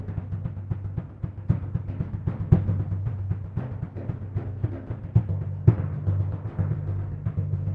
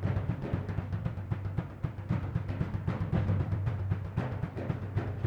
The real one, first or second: first